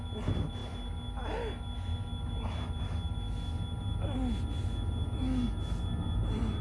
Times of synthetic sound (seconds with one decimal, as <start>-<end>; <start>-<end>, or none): none